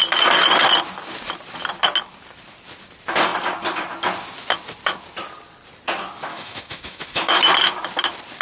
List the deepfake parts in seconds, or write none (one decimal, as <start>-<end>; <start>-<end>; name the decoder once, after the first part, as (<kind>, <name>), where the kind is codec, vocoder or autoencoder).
6.3-7.4 (autoencoder, DAC-VAE)